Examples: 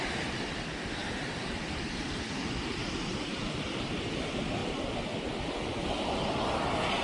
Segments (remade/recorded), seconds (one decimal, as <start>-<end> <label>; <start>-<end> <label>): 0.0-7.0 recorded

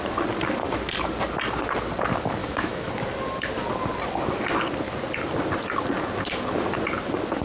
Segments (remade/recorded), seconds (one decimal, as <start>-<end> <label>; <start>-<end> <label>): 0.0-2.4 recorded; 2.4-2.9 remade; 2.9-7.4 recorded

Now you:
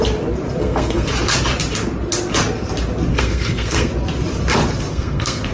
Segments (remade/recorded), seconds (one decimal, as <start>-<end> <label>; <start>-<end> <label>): 0.0-0.6 recorded; 0.6-1.1 remade; 1.1-3.1 recorded; 3.1-3.9 remade; 3.9-4.9 recorded; 4.9-5.5 remade

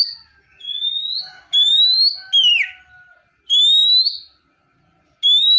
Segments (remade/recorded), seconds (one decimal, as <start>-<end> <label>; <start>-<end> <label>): 0.0-5.6 recorded

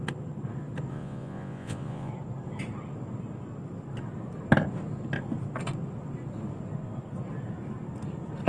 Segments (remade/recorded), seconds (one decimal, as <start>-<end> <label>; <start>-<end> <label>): 0.0-0.9 recorded; 0.9-2.1 remade; 2.1-8.5 recorded

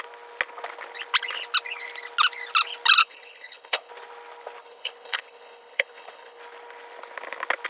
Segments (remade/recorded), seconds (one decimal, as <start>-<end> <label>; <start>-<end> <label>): 0.0-3.0 recorded; 3.0-3.9 remade; 3.9-4.6 recorded; 4.6-6.4 remade; 6.4-7.7 recorded

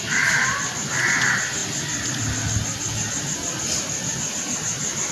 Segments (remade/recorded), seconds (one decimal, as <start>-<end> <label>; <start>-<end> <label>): 0.0-5.1 recorded

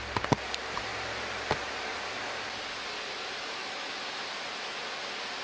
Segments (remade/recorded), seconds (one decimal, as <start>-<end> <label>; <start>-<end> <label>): 0.0-3.6 recorded; 3.6-4.2 remade; 4.2-5.4 recorded